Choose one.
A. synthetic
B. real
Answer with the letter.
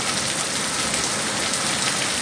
B